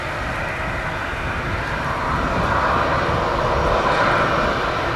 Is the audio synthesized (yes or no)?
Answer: no